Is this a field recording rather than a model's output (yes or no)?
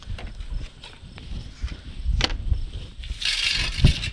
yes